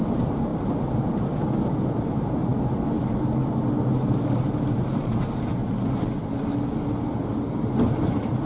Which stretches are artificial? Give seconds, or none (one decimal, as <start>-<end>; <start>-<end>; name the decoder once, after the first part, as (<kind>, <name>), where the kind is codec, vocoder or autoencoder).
0.0-0.5 (vocoder, BigVGAN v2); 1.9-2.5; 3.9-5.6; 7.1-8.5